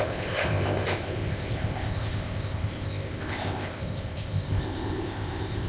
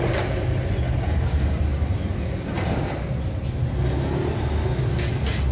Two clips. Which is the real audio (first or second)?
second